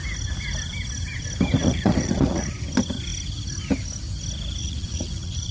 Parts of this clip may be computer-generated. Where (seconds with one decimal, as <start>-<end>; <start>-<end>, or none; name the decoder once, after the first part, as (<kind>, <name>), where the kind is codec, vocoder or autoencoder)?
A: 1.6-2.5 (vocoder, Vocos); 4.6-5.5